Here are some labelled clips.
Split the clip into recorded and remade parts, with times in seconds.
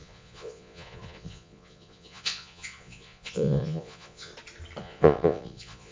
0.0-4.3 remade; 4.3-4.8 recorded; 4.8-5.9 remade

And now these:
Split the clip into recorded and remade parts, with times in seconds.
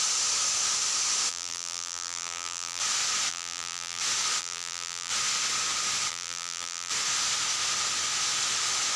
0.0-1.3 recorded; 1.3-2.8 remade; 2.8-3.3 recorded; 3.3-4.0 remade; 4.0-4.4 recorded; 4.4-5.1 remade; 5.1-6.1 recorded; 6.1-6.9 remade; 6.9-9.0 recorded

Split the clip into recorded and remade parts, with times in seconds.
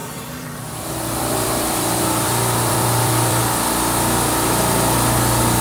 0.0-3.4 remade; 3.4-5.6 recorded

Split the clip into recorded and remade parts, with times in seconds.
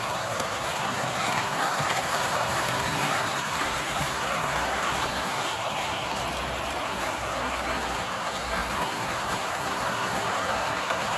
0.0-6.2 remade; 6.2-6.8 recorded; 6.8-11.2 remade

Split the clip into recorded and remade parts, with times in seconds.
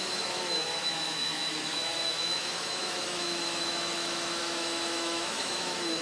0.0-6.0 remade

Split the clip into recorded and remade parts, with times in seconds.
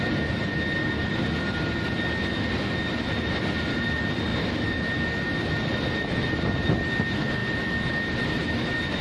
0.0-4.3 recorded; 4.3-5.5 remade; 5.5-7.4 recorded; 7.4-8.5 remade; 8.5-9.0 recorded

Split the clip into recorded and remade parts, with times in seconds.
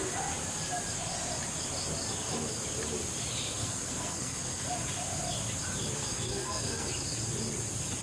0.0-3.6 recorded; 3.6-4.6 remade; 4.6-6.0 recorded; 6.0-6.9 remade; 6.9-8.0 recorded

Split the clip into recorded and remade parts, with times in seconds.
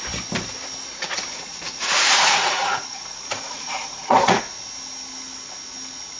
0.0-1.3 recorded; 1.3-4.4 remade; 4.4-6.2 recorded